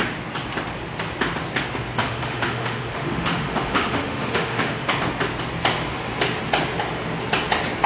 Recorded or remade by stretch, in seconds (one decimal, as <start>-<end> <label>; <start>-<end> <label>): 0.0-2.0 recorded; 2.0-4.9 remade; 4.9-7.9 recorded